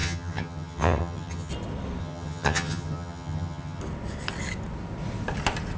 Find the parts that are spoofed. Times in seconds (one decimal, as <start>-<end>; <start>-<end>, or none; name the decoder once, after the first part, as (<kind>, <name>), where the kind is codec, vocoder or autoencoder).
0.0-1.5 (vocoder, HiFi-GAN); 2.0-3.8